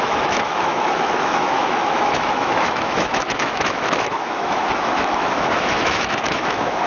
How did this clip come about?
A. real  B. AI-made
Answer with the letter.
B